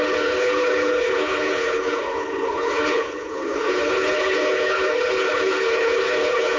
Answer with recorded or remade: remade